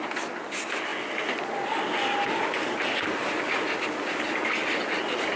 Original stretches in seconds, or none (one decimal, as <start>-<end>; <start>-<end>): 0.0-5.4